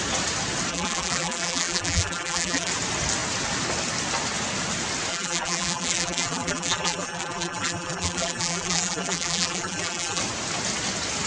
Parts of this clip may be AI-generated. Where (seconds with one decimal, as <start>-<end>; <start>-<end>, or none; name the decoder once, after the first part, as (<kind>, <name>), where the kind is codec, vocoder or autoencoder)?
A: 0.7-2.7 (vocoder, BigVGAN v2); 5.1-10.2